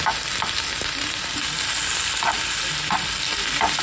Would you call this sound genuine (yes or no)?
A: yes